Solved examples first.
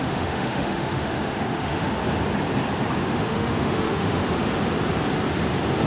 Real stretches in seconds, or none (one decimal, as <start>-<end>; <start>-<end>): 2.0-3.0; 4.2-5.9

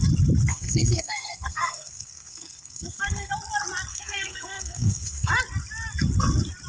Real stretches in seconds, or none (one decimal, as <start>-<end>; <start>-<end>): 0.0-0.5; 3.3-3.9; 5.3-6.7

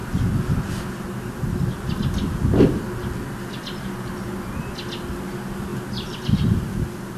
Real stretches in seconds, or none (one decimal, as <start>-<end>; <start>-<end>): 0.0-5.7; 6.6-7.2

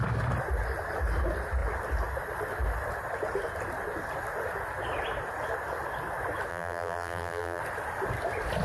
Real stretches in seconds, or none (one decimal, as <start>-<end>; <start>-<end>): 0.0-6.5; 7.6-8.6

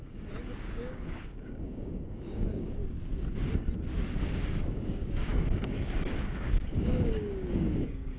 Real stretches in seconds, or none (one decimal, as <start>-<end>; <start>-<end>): 2.8-4.5